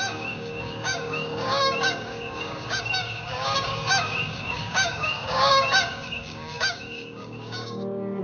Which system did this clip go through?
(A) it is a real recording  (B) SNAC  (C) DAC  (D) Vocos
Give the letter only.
C